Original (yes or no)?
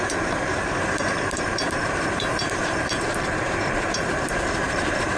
no